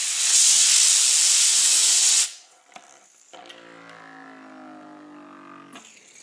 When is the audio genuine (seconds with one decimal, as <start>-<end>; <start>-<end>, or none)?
0.7-1.5; 2.6-6.2